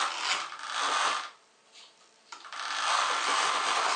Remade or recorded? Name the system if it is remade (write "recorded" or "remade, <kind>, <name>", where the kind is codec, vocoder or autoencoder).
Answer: recorded